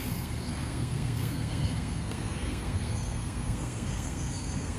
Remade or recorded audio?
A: remade